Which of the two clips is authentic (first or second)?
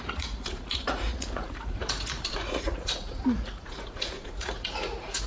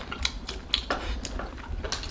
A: second